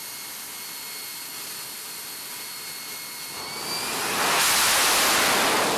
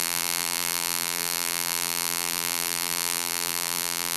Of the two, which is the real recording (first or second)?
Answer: first